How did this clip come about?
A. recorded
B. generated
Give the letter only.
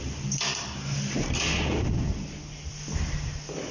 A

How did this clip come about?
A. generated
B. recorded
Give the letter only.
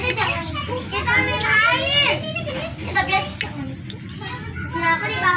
B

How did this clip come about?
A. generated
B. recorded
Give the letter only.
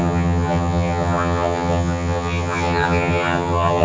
A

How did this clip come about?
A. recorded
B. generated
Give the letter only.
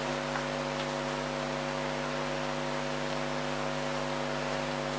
A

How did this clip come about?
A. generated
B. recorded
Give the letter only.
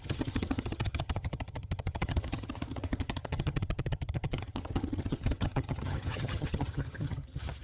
A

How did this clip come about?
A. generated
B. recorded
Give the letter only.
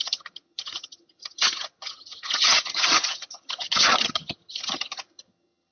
A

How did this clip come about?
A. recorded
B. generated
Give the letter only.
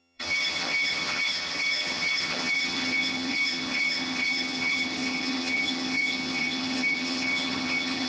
B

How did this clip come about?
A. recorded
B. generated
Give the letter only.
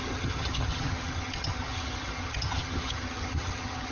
B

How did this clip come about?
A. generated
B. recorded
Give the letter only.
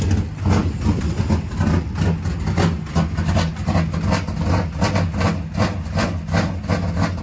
B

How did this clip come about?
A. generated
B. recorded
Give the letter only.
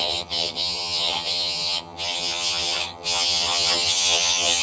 A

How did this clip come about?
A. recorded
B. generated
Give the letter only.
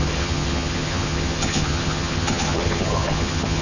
B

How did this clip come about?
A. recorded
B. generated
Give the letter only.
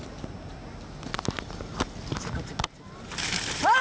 A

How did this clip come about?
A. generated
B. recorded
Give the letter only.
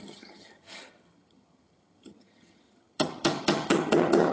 A